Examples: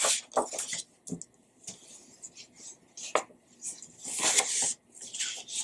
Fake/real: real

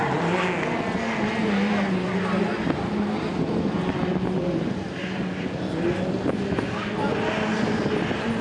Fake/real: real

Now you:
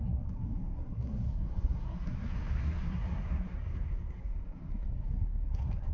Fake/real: fake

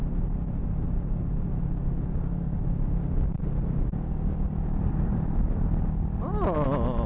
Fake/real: real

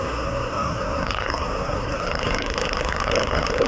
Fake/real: fake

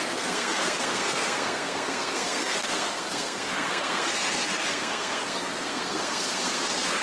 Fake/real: fake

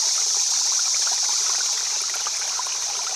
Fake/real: real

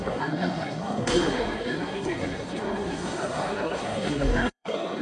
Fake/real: fake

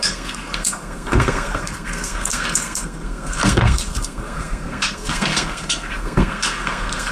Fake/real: fake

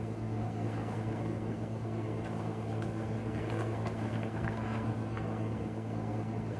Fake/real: fake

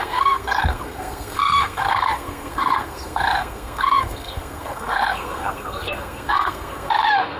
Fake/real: fake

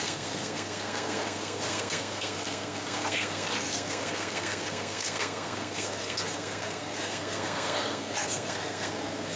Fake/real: fake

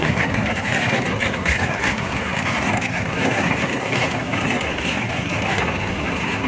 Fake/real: fake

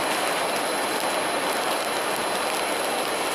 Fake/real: real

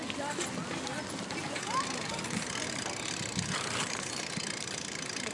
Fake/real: real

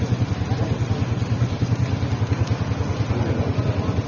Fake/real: real